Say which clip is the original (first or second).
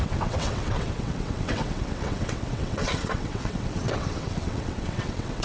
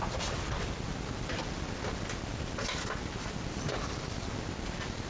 second